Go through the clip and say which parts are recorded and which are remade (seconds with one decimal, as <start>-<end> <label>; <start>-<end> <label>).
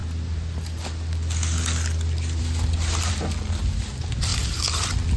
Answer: 0.0-5.2 recorded